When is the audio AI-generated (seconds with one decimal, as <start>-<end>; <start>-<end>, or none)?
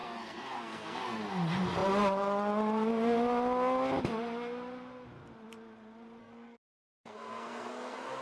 0.0-1.2; 6.2-8.2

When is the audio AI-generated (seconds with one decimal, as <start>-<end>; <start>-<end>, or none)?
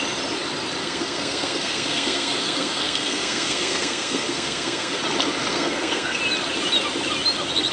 0.8-5.0; 5.5-6.2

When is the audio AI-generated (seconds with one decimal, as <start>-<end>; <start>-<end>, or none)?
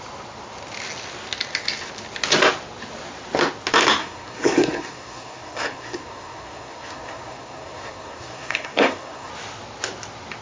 4.0-9.3